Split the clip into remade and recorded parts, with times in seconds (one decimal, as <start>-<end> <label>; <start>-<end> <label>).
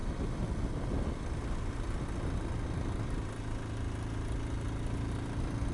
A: 0.0-5.7 recorded